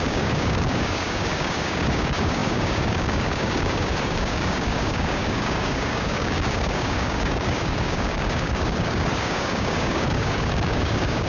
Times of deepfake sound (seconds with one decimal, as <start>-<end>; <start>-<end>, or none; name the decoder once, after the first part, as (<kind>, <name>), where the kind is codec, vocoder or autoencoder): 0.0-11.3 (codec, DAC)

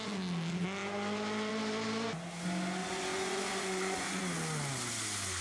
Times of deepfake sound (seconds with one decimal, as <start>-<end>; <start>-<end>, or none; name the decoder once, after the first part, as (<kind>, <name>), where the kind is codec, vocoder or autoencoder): 2.8-4.2 (vocoder, Vocos)

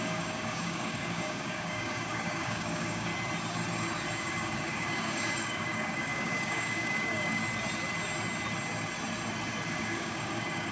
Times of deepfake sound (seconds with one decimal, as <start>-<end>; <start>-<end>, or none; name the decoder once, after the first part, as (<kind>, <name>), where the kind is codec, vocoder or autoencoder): 0.0-3.1 (codec, DAC); 4.2-7.4; 9.7-10.7